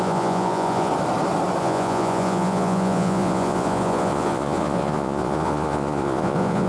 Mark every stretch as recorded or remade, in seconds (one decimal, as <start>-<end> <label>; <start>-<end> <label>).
0.0-0.9 remade; 0.9-1.6 recorded; 1.6-6.7 remade